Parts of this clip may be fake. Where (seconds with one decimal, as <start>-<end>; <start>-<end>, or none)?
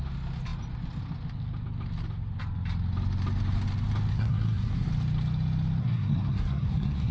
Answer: 4.1-4.9; 5.8-7.1